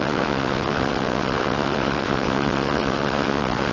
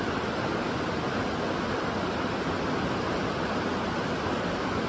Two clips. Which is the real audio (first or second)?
second